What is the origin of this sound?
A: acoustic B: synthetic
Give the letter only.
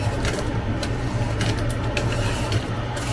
A